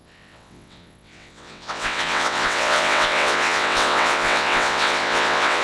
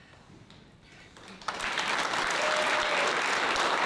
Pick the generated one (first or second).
first